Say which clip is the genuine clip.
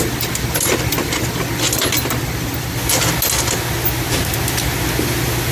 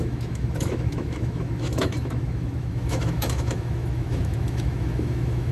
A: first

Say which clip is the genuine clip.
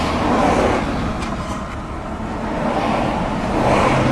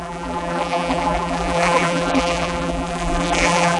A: first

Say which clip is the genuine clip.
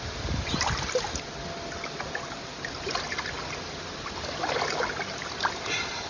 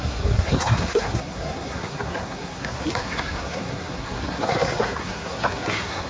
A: first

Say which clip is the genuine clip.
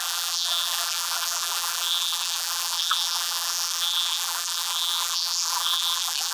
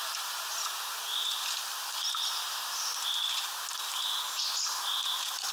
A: second